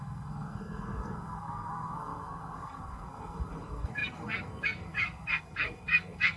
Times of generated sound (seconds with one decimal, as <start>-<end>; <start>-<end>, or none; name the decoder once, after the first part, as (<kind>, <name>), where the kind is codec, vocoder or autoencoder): 0.0-6.4 (codec, SNAC)